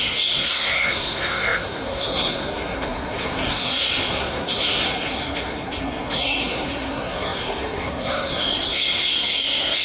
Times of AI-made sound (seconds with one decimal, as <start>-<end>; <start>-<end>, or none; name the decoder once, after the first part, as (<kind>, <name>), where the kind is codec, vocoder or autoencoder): 0.0-9.8 (codec, SNAC)